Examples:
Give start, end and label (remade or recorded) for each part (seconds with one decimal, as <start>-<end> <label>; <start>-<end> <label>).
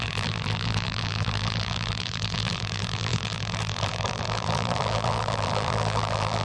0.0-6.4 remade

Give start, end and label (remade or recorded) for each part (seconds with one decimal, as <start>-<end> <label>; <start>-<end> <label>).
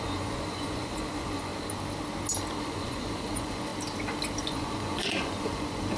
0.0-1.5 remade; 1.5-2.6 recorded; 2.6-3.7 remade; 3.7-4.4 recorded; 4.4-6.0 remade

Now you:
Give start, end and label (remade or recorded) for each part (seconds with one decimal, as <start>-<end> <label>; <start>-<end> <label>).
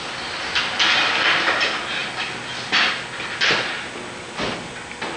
0.0-5.2 recorded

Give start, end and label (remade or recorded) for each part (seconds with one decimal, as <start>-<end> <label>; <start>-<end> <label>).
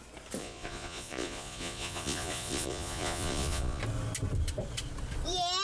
0.0-0.4 recorded; 0.4-3.8 remade; 3.8-5.6 recorded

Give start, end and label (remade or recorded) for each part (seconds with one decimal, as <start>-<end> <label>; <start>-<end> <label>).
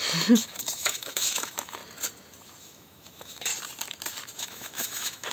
0.0-1.8 remade; 1.8-2.6 recorded; 2.6-3.5 remade; 3.5-4.4 recorded; 4.4-5.3 remade